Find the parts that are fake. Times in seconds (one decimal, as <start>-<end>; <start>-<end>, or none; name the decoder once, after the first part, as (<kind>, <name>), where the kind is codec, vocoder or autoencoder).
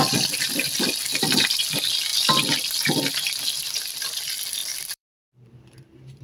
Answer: 1.1-1.6 (vocoder, BigVGAN v2); 4.6-6.2